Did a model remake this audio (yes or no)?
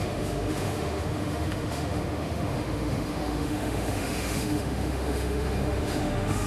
yes